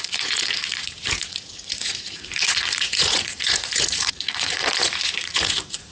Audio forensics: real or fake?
fake